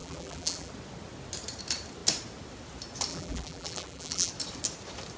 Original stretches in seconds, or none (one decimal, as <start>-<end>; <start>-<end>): 0.7-3.1; 4.3-5.2